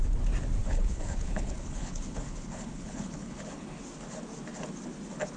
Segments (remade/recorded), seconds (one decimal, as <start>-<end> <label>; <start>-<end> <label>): 0.0-0.6 recorded; 0.6-3.8 remade; 3.8-5.4 recorded